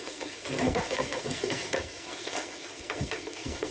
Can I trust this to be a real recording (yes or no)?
no